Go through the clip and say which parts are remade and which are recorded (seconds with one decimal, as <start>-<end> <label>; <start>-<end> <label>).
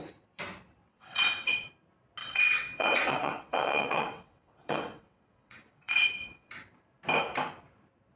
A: 0.0-0.9 recorded; 0.9-1.7 remade; 1.7-2.2 recorded; 2.2-6.5 remade; 6.5-8.2 recorded